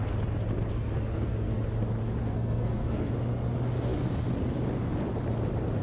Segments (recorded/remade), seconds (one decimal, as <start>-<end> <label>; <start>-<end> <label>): 0.0-0.7 recorded; 0.7-1.6 remade; 1.6-2.2 recorded; 2.2-3.1 remade; 3.1-5.8 recorded